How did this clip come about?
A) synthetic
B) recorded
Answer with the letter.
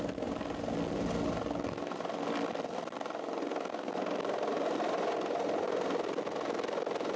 B